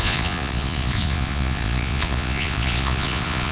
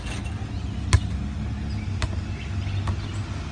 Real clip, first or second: second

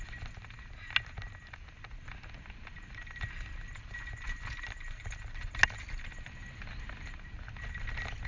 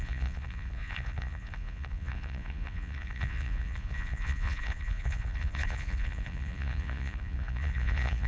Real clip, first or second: first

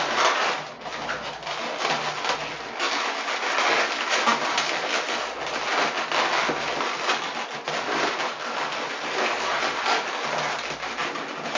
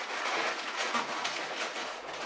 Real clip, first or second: first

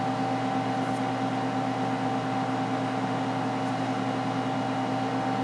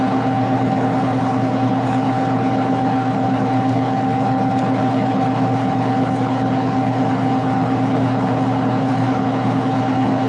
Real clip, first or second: first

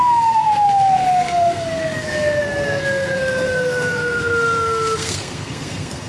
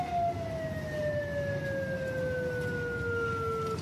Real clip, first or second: second